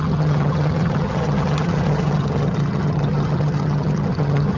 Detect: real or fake fake